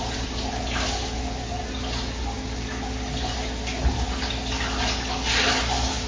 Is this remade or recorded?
recorded